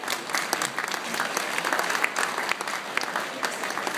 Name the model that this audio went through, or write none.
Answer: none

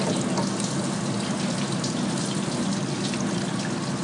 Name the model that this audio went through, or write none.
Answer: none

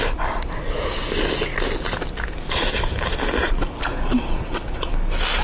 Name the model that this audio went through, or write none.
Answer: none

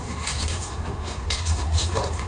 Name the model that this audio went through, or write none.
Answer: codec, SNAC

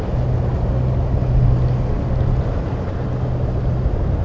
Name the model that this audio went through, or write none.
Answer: none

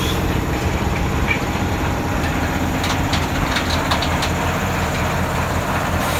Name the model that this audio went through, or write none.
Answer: vocoder, BigVGAN v2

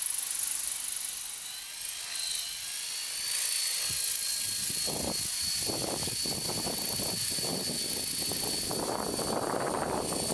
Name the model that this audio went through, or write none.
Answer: none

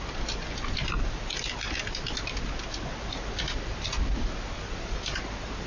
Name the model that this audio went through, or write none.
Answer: none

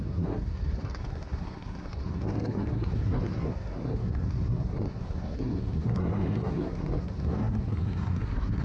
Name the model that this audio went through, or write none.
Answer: codec, SNAC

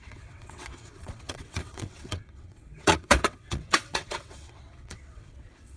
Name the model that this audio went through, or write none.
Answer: vocoder, WaveNeXt